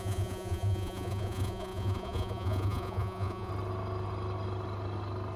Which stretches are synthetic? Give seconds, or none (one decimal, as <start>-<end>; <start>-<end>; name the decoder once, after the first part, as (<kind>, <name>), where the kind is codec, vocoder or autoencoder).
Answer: 0.0-3.5 (vocoder, Vocos)